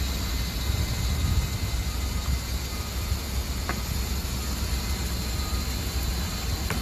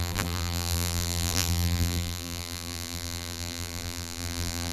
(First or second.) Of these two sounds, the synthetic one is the second